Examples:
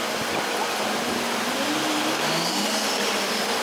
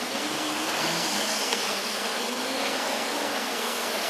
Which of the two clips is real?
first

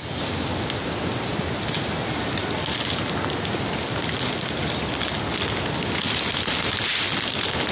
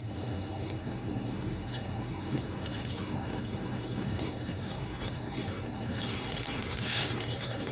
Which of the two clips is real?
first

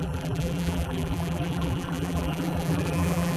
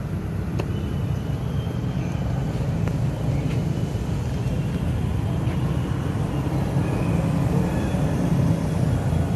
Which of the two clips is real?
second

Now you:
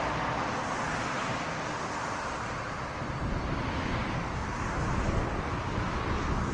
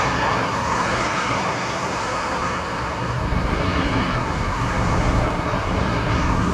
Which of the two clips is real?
first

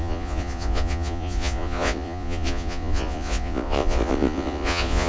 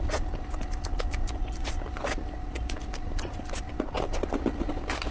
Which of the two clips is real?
second